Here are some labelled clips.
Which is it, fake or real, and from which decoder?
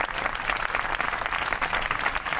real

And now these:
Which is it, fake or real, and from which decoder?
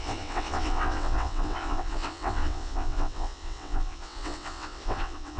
fake, vocoder, WaveNeXt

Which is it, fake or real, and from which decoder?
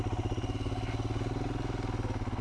real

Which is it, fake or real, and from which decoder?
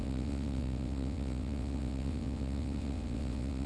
fake, vocoder, WaveNeXt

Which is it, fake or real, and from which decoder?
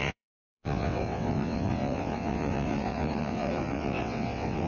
fake, vocoder, WaveNeXt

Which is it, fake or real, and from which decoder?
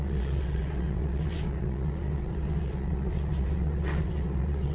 fake, vocoder, WaveNeXt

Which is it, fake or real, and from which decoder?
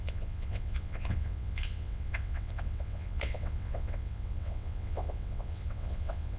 fake, vocoder, WaveNeXt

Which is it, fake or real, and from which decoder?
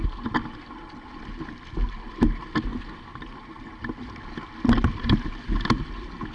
real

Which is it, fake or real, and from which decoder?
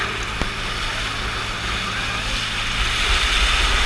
real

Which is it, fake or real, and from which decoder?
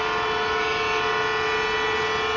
real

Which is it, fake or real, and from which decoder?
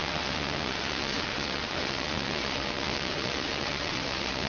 fake, vocoder, WaveNeXt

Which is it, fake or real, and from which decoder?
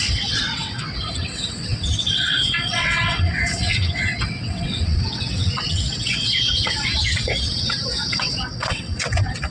fake, vocoder, WaveNeXt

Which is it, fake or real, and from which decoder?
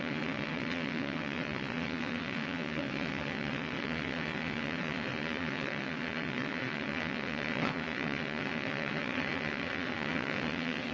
fake, vocoder, WaveNeXt